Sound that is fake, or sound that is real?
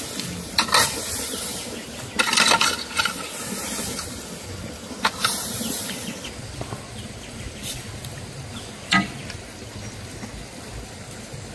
real